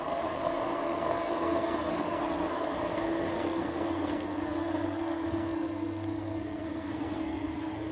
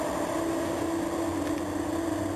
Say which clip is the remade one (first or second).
first